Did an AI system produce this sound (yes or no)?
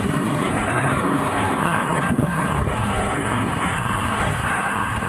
yes